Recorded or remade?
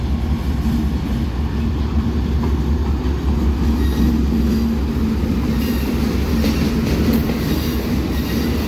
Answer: recorded